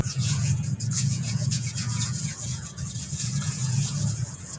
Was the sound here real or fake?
fake